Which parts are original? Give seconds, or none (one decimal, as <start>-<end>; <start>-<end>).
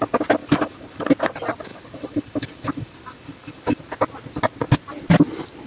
0.0-0.4; 1.0-1.7; 3.8-5.7